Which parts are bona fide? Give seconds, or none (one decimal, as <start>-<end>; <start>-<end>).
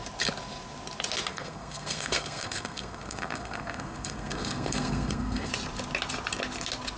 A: 0.0-1.3; 5.5-7.0